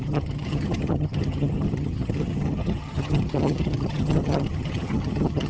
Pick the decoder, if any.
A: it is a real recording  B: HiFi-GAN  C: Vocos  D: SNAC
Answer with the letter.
B